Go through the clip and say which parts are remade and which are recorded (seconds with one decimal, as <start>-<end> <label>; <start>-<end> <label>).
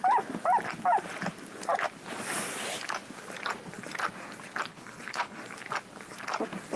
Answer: 0.0-4.7 recorded; 4.7-5.4 remade; 5.4-6.8 recorded